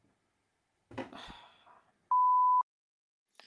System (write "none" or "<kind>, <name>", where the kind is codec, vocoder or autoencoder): none